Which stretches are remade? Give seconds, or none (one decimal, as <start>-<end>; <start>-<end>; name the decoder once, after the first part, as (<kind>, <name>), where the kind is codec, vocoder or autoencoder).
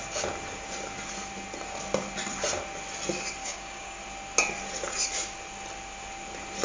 3.4-4.0 (codec, DAC)